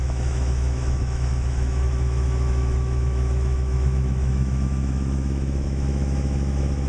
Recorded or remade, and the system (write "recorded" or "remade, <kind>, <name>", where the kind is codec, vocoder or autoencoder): remade, autoencoder, DAC-VAE